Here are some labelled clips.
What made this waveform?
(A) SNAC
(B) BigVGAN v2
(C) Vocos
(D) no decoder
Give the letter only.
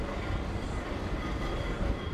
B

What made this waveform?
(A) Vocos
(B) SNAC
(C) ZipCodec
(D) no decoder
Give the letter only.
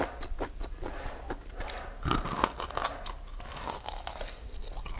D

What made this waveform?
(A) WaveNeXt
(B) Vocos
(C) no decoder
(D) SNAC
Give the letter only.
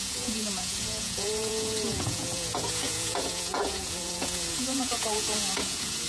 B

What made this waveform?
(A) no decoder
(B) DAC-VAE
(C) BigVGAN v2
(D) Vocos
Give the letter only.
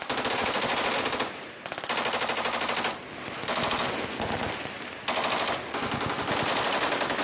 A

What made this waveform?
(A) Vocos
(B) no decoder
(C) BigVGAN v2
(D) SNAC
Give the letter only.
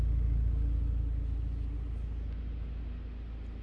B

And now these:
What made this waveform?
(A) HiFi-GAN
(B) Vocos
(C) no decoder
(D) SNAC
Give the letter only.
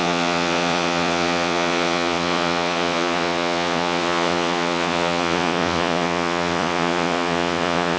B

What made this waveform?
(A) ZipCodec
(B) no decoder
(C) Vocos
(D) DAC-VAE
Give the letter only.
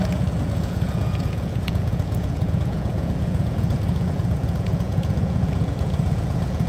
C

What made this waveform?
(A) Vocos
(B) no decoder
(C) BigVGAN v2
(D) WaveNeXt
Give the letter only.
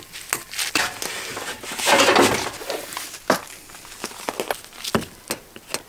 B